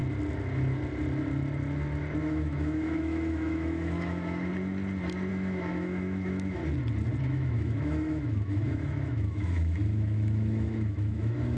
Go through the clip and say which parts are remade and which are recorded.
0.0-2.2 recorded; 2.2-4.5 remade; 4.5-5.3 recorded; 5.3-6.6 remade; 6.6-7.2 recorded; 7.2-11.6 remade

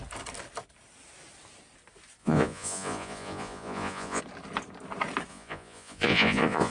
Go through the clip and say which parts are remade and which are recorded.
0.0-2.2 recorded; 2.2-4.2 remade; 4.2-5.3 recorded; 5.3-6.7 remade

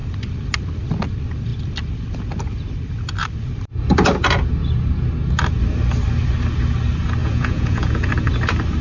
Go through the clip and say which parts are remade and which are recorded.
0.0-7.2 recorded; 7.2-8.1 remade; 8.1-8.8 recorded

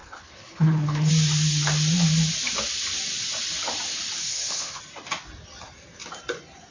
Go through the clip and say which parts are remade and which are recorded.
0.0-1.1 remade; 1.1-4.2 recorded; 4.2-4.8 remade; 4.8-6.7 recorded

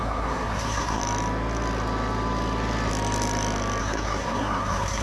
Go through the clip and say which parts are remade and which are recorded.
0.0-1.0 remade; 1.0-3.8 recorded; 3.8-5.0 remade